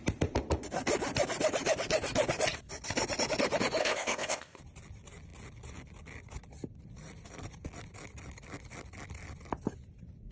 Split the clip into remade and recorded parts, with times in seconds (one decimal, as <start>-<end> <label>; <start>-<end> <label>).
0.0-3.8 recorded; 3.8-4.6 remade; 4.6-10.3 recorded